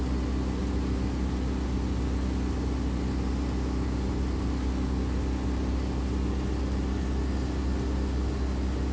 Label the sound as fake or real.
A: real